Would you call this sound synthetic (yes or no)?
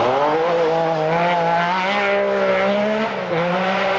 no